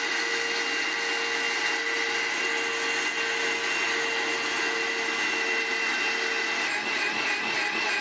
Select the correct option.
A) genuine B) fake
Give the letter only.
A